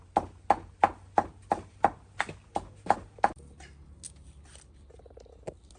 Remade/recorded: recorded